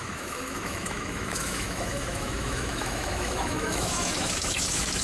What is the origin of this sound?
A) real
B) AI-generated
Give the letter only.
B